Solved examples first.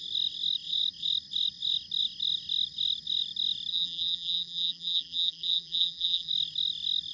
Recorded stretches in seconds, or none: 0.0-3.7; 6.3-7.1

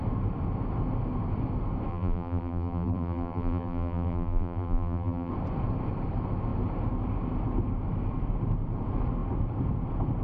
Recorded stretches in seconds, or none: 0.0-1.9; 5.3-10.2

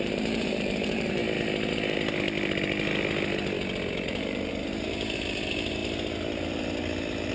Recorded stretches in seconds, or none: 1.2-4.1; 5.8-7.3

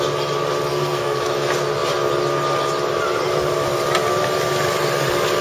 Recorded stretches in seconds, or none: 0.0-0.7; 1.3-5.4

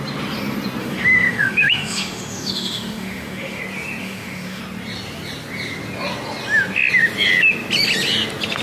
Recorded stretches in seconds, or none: 0.0-0.8; 3.6-4.0; 4.6-8.6

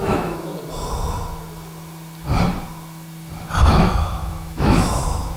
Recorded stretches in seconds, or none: 0.5-3.7

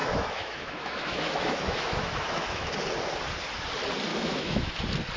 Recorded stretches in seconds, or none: 2.7-4.1; 4.7-5.2

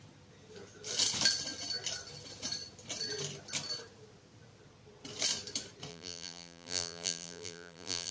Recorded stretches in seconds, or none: 0.0-5.9